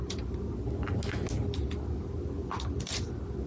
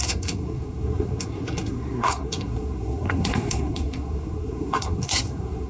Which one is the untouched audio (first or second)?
first